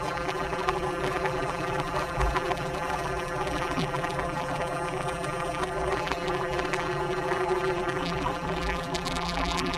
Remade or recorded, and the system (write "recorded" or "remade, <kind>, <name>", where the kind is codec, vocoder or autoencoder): remade, vocoder, BigVGAN v2